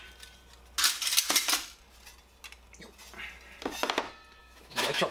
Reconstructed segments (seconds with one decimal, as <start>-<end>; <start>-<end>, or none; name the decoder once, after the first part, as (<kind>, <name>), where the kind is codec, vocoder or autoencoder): 4.4-5.1 (autoencoder, DAC-VAE)